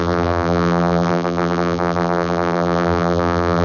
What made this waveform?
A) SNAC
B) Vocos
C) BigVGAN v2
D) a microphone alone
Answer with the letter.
C